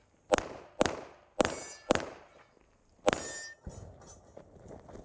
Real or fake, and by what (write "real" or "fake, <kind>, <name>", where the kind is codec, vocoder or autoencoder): real